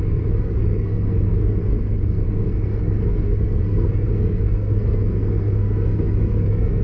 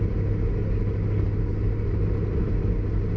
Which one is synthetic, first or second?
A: first